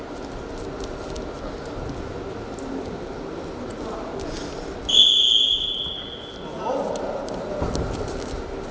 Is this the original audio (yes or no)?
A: yes